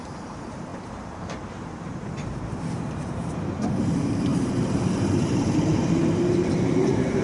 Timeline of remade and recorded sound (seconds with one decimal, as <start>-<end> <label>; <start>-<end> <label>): 0.0-7.2 remade